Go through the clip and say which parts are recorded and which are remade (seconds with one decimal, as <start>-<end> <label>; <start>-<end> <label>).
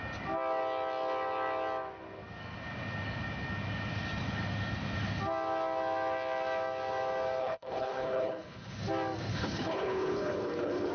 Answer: 0.0-7.4 recorded; 7.4-8.8 remade; 8.8-9.3 recorded; 9.3-10.9 remade